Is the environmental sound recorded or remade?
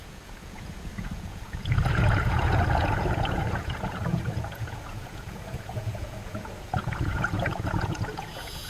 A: remade